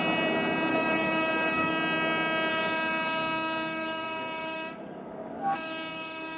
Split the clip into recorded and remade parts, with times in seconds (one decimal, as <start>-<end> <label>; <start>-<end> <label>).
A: 0.0-0.7 recorded; 0.7-1.7 remade; 1.7-2.5 recorded; 2.5-6.4 remade